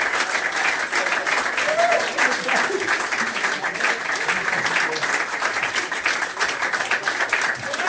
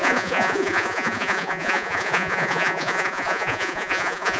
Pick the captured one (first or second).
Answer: first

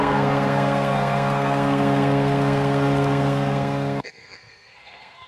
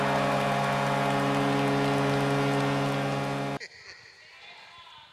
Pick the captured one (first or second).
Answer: second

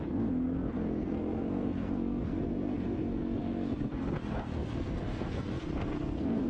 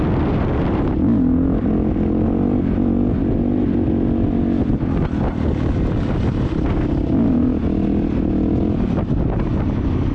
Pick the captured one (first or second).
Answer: second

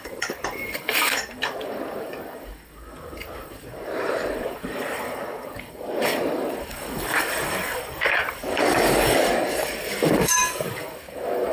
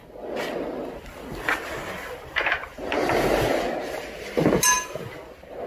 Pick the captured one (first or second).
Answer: second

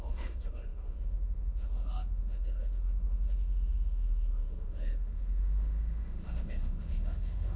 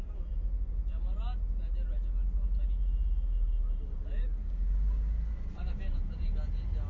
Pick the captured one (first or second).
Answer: second